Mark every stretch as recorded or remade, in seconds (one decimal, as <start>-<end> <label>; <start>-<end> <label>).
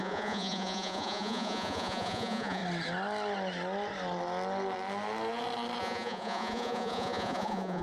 0.0-2.6 remade; 2.6-5.8 recorded; 5.8-7.8 remade